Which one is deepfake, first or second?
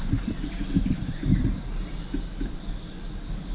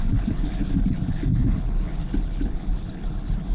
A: second